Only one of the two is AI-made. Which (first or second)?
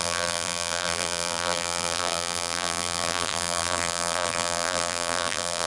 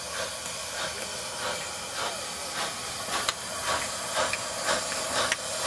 first